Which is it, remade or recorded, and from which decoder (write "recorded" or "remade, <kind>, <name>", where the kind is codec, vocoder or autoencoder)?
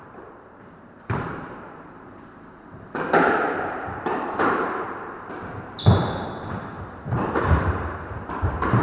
remade, vocoder, BigVGAN v2